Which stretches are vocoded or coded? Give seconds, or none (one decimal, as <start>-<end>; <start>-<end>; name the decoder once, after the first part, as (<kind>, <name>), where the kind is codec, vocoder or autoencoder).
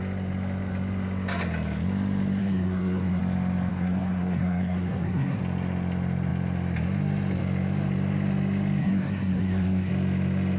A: 2.4-3.2 (codec, SNAC); 3.7-5.4; 8.8-9.9